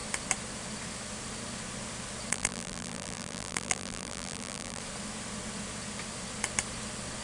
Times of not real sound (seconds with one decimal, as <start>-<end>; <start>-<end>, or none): 2.3-4.8